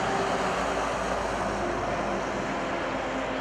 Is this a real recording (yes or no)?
yes